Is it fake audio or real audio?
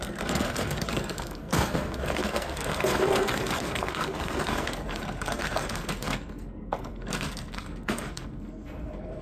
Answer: fake